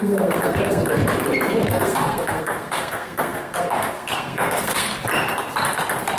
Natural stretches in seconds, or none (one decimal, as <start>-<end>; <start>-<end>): 1.0-1.5; 4.9-6.2